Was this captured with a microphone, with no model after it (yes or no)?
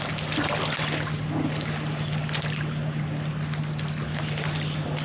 yes